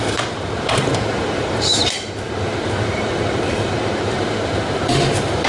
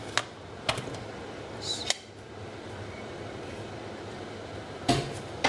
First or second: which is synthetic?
first